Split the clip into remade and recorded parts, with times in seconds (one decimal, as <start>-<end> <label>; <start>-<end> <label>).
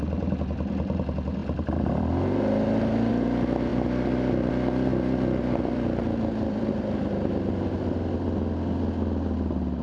0.0-1.4 recorded; 1.4-3.1 remade; 3.1-3.7 recorded; 3.7-4.5 remade; 4.5-4.9 recorded; 4.9-7.3 remade; 7.3-9.8 recorded